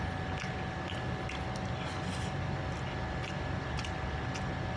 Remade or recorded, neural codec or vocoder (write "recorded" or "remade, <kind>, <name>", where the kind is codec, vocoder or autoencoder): recorded